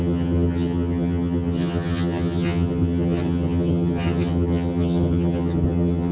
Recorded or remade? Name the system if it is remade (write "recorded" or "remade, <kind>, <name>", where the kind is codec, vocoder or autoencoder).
remade, vocoder, HiFi-GAN